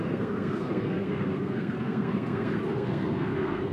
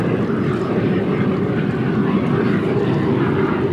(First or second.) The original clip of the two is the second